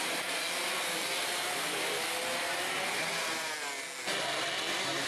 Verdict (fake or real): real